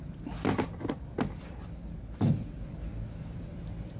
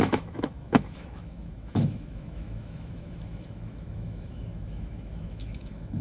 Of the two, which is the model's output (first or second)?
second